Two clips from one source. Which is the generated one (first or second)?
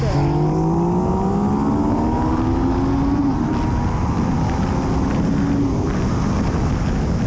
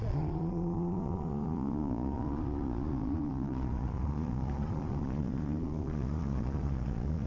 second